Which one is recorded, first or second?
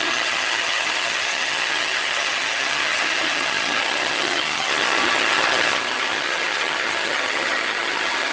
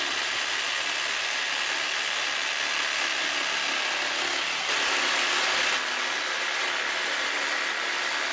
second